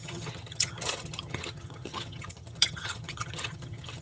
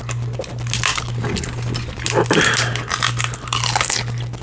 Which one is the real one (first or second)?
second